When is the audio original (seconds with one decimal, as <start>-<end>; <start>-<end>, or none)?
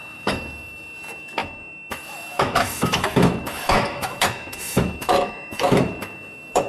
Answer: none